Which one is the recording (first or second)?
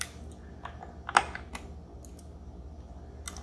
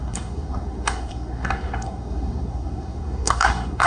first